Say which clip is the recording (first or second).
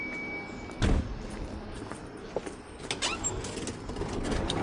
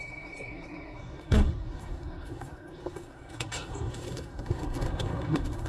first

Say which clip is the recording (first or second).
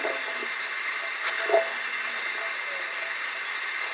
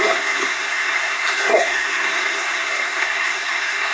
first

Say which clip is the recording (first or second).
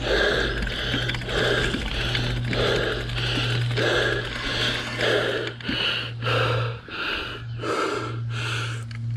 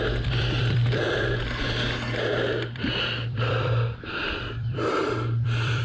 first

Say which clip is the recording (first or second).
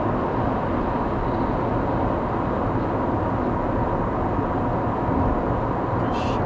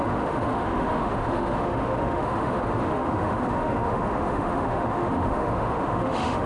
first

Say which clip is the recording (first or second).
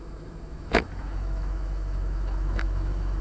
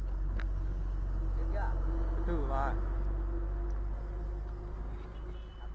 second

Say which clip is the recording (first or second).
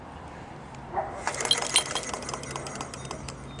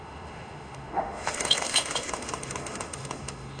first